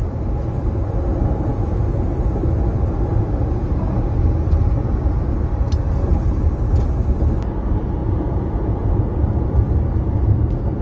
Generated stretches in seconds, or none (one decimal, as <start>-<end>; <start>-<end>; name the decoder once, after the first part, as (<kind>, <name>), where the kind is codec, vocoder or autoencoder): 1.5-2.1 (vocoder, Vocos); 8.0-9.0